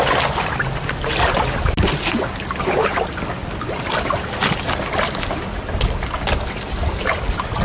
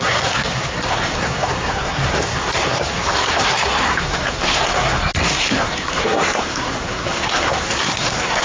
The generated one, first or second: second